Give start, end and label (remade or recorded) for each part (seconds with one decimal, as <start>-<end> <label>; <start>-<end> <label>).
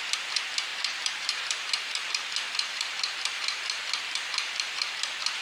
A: 0.0-5.4 remade